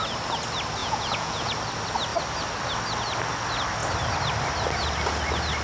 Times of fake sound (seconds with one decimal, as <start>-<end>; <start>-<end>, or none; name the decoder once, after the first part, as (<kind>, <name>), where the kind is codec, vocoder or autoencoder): 0.8-1.5 (vocoder, Vocos)